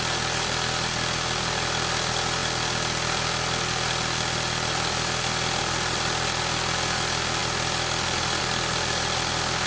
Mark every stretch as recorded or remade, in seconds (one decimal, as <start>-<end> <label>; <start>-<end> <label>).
0.0-9.7 recorded